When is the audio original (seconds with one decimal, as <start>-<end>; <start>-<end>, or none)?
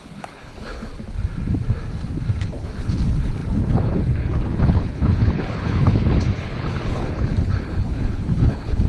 0.9-2.4